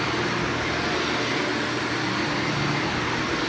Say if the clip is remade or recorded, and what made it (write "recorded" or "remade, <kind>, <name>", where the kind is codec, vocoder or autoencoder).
recorded